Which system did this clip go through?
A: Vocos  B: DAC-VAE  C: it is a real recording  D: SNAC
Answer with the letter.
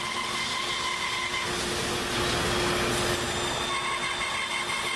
C